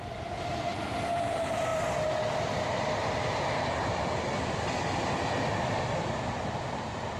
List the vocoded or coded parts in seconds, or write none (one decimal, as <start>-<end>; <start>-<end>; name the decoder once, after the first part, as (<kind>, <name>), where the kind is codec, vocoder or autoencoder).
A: none